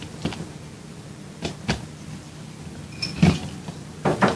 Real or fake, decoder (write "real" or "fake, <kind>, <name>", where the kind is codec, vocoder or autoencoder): real